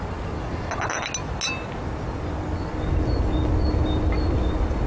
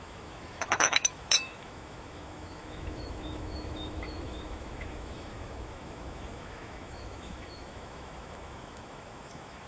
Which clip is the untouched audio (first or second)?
first